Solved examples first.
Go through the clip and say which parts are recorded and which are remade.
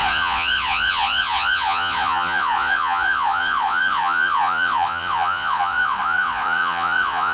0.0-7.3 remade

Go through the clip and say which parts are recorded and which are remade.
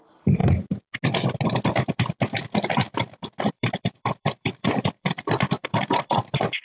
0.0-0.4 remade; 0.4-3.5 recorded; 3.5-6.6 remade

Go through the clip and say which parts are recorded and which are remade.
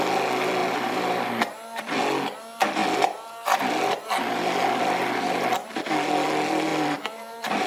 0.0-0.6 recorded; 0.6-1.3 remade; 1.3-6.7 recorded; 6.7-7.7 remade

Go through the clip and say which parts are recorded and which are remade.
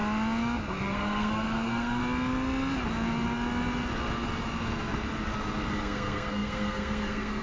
0.0-0.8 recorded; 0.8-2.0 remade; 2.0-5.8 recorded; 5.8-7.4 remade